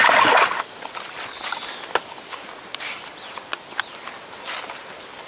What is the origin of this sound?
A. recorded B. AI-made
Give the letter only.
A